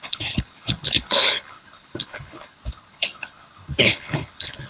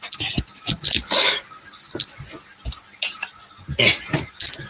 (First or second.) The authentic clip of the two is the second